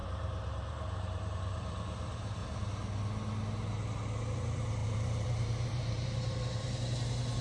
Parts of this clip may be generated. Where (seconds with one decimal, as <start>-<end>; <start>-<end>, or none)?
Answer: 0.0-2.4; 4.2-7.4